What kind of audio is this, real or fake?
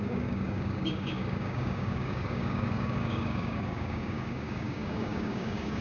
fake